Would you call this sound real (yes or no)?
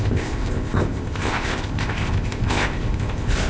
no